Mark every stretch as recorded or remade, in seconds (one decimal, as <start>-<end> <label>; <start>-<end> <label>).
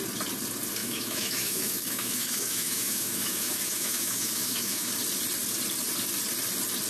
0.0-0.8 recorded; 0.8-4.9 remade; 4.9-6.9 recorded